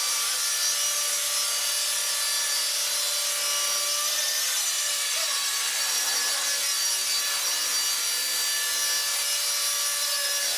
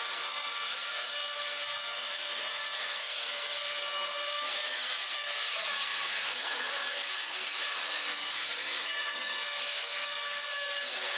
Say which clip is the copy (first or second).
second